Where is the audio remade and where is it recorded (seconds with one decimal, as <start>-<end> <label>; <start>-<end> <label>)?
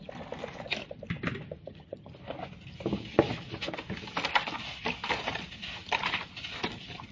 0.0-1.6 recorded; 1.6-2.1 remade; 2.1-7.1 recorded